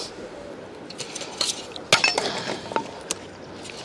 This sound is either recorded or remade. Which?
recorded